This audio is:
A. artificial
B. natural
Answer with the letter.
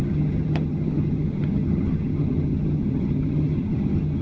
A